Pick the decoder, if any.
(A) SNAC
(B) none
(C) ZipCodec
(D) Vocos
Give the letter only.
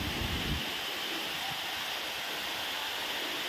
B